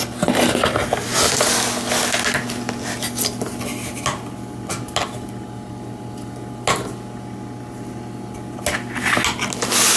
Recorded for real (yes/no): yes